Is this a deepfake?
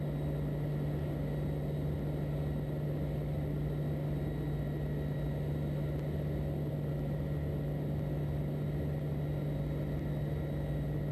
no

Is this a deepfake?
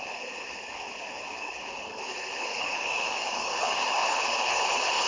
yes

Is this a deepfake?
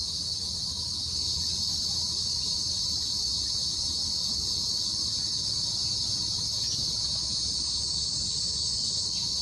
no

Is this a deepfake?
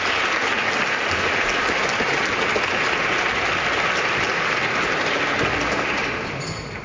no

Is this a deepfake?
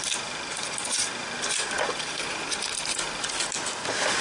no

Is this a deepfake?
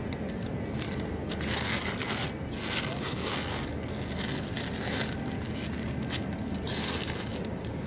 no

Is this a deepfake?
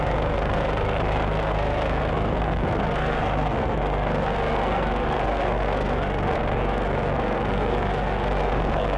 yes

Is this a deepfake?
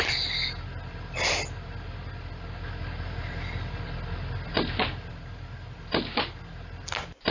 no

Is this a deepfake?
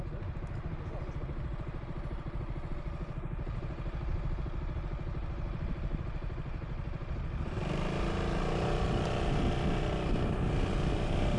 no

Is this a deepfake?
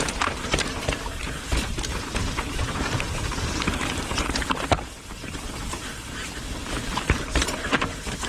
yes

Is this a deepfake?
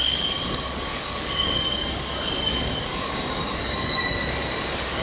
yes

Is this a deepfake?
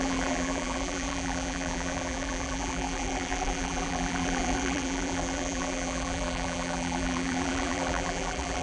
yes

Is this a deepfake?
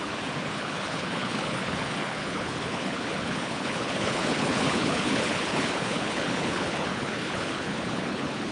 yes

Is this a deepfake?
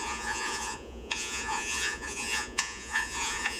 yes